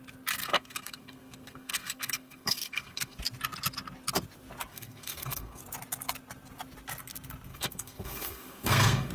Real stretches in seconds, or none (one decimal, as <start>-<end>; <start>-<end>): 0.0-0.4; 3.2-4.7; 5.6-7.5